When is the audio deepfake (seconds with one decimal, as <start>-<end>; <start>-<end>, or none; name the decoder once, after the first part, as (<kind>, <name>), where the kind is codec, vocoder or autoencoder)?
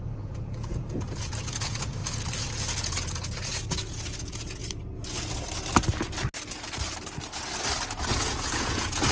0.0-2.0 (vocoder, Vocos); 2.6-4.6; 8.3-9.1